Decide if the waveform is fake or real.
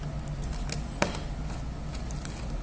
real